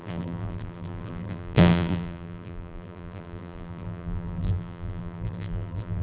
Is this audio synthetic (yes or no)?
yes